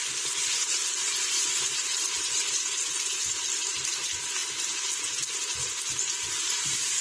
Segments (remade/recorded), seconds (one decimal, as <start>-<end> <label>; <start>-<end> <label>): 0.0-7.0 recorded